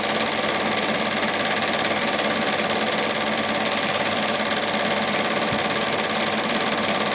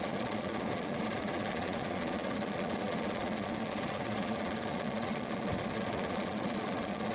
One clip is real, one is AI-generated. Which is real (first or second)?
first